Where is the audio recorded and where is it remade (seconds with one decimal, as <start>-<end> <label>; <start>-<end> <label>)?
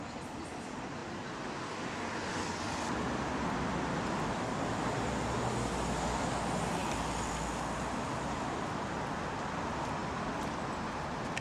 0.0-11.4 recorded